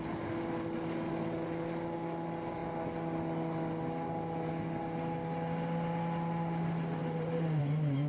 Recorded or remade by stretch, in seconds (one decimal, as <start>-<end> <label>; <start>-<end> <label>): 0.0-7.0 recorded; 7.0-7.6 remade; 7.6-8.1 recorded